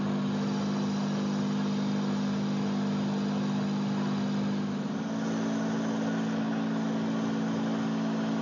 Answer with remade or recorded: recorded